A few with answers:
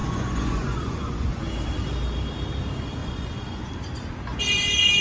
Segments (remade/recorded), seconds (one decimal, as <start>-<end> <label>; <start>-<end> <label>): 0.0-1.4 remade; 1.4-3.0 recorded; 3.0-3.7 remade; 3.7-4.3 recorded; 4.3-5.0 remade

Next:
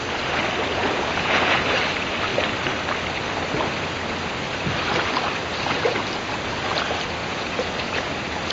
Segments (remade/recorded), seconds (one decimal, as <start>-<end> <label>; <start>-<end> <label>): 0.0-0.7 recorded; 0.7-1.6 remade; 1.6-7.2 recorded; 7.2-8.1 remade; 8.1-8.5 recorded

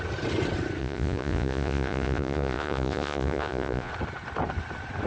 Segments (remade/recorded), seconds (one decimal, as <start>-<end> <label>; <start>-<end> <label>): 0.0-0.8 recorded; 0.8-3.9 remade; 3.9-5.1 recorded